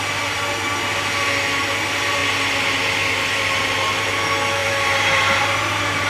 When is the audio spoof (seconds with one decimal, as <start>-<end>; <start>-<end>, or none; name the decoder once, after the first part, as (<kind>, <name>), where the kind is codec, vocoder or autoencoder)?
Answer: 4.6-6.1 (vocoder, BigVGAN v2)